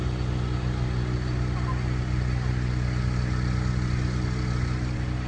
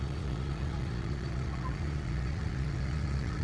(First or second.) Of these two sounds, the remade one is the second